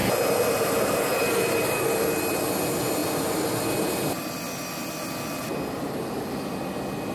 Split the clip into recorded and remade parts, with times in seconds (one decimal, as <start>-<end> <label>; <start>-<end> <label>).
0.0-7.1 recorded